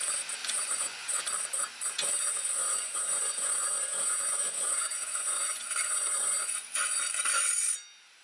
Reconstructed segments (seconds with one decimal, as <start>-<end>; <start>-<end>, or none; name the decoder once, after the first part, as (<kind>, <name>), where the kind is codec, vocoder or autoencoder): 0.4-1.2 (vocoder, Vocos); 2.6-6.9